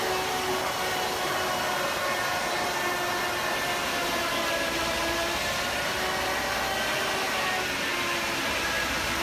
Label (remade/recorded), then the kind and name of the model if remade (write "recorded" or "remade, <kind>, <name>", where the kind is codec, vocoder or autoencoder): recorded